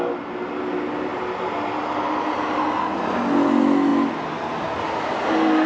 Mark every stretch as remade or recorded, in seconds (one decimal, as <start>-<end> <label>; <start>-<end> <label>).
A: 0.0-5.7 recorded